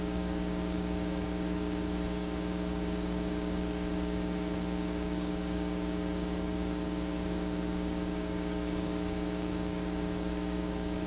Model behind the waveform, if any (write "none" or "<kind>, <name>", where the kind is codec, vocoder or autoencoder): codec, DAC